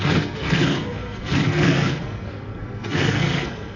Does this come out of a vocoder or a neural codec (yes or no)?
yes